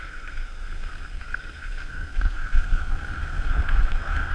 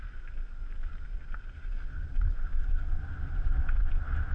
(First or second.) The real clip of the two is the second